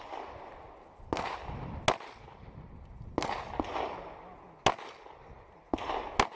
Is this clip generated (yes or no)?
no